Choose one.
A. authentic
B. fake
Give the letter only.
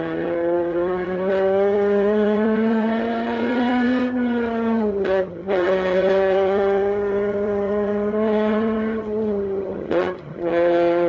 B